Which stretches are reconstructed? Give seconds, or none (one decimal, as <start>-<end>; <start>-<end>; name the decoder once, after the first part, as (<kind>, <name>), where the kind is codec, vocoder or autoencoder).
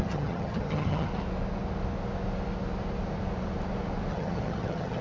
0.0-1.1 (vocoder, HiFi-GAN); 4.1-5.0